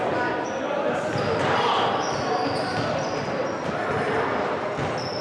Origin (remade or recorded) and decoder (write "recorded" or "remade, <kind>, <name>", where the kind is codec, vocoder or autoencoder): recorded